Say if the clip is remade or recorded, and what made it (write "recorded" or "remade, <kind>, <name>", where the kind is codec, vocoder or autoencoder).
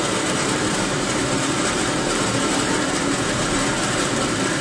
remade, vocoder, BigVGAN v2